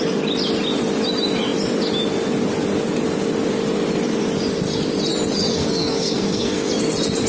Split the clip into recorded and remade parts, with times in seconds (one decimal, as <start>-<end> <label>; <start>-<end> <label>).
0.0-5.5 recorded; 5.5-6.7 remade; 6.7-7.3 recorded

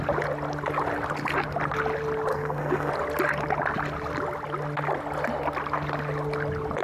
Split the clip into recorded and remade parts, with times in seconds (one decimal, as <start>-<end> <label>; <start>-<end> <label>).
0.0-2.3 recorded; 2.3-2.9 remade; 2.9-6.8 recorded

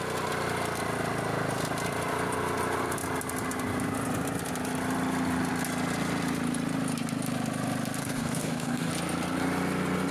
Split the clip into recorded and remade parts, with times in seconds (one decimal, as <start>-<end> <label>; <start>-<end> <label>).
0.0-8.0 recorded; 8.0-8.9 remade; 8.9-10.1 recorded

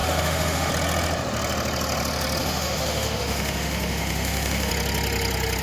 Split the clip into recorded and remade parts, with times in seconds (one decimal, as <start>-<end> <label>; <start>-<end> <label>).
0.0-0.7 remade; 0.7-2.4 recorded; 2.4-4.7 remade; 4.7-5.6 recorded

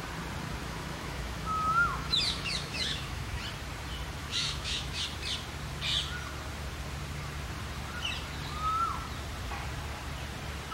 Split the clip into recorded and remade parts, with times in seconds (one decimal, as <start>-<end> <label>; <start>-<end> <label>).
0.0-0.6 recorded; 0.6-3.4 remade; 3.4-4.2 recorded; 4.2-5.0 remade; 5.0-10.7 recorded

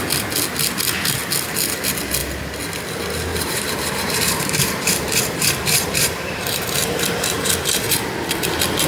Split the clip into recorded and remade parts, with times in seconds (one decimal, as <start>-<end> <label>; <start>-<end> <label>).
0.0-3.3 recorded; 3.3-7.5 remade; 7.5-8.9 recorded